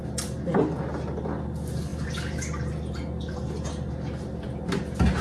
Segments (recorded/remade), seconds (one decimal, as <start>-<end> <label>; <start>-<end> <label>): 0.0-5.2 recorded